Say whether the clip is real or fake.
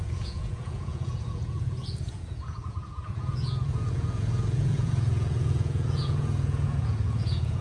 fake